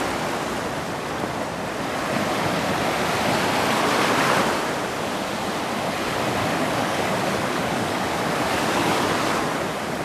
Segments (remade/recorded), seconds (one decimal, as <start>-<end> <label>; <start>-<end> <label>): 0.0-6.4 recorded; 6.4-8.9 remade; 8.9-10.0 recorded